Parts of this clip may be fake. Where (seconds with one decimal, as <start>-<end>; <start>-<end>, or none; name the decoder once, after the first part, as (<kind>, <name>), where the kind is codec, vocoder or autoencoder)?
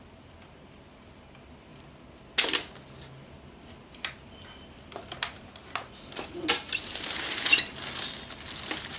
none